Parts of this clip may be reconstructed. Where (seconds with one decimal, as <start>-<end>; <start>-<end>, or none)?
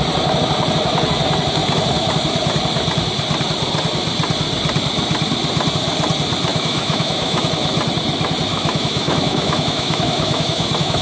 6.5-7.5; 8.5-11.0